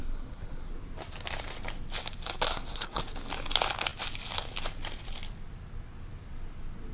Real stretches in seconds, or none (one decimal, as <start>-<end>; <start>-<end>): 0.7-2.5; 3.0-6.9

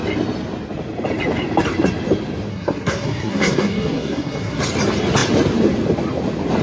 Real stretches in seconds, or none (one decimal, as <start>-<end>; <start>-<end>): 0.0-2.5; 4.6-6.6